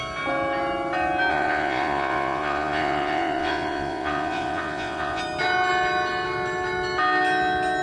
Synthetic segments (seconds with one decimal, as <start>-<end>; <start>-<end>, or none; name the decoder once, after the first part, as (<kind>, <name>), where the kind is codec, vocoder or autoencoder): 1.3-5.2 (vocoder, Vocos)